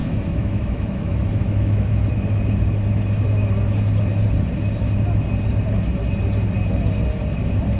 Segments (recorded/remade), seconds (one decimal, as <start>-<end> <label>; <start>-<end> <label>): 0.0-2.1 remade; 2.1-7.8 recorded